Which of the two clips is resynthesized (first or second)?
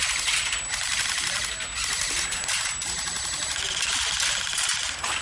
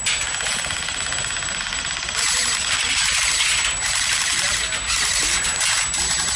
first